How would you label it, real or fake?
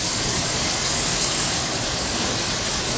fake